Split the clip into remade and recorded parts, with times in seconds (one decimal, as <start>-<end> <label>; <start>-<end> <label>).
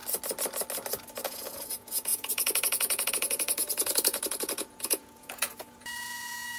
0.0-1.2 recorded; 1.2-6.6 remade